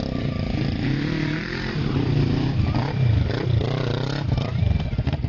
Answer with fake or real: fake